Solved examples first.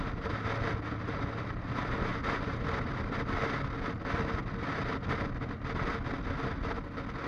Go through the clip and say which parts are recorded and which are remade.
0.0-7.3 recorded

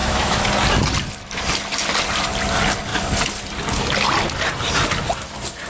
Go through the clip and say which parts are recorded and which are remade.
0.0-0.5 remade; 0.5-5.7 recorded